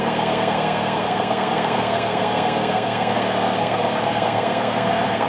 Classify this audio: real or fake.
fake